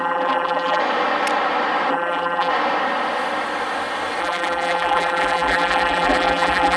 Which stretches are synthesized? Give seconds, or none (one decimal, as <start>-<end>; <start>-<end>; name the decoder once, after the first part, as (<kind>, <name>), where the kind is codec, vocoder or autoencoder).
0.0-0.8 (vocoder, BigVGAN v2); 1.9-2.5; 4.2-6.8